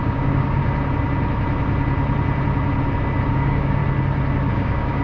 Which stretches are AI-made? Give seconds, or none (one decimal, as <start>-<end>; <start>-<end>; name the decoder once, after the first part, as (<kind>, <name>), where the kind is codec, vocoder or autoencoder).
0.0-0.6 (codec, DAC); 3.3-3.8; 4.5-5.0